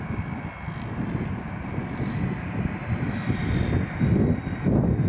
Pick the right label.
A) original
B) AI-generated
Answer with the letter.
A